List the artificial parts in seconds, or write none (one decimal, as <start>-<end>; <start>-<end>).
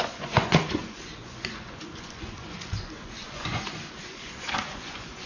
0.0-5.3